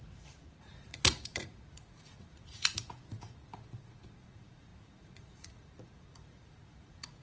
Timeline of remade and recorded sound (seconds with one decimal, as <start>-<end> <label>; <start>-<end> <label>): 0.0-7.2 remade